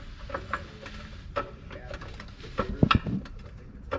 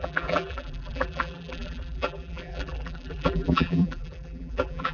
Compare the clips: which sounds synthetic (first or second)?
second